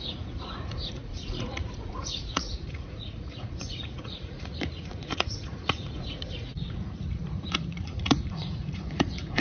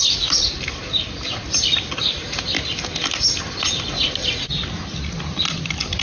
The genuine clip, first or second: second